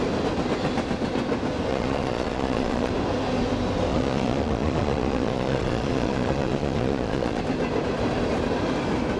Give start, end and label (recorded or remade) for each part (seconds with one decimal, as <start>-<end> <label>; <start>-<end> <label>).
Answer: 0.0-1.7 recorded; 1.7-2.9 remade; 2.9-3.9 recorded; 3.9-7.4 remade; 7.4-9.2 recorded